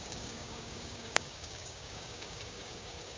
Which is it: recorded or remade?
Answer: remade